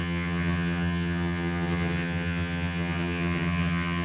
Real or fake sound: fake